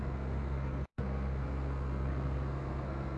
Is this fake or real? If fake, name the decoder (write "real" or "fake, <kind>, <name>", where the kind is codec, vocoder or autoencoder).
fake, codec, SNAC